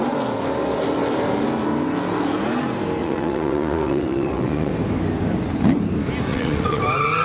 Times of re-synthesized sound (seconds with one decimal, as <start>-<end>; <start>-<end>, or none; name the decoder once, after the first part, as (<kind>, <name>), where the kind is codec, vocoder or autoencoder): 3.0-4.7 (vocoder, WaveNeXt); 6.3-6.8